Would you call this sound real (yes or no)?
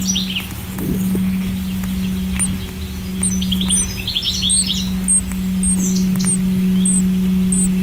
yes